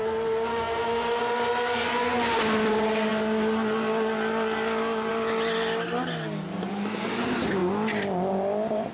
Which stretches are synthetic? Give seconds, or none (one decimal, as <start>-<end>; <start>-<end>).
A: 0.5-1.2